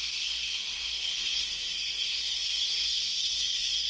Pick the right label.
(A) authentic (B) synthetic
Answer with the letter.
B